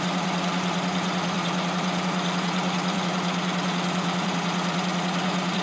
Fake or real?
fake